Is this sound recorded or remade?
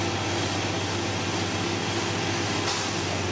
recorded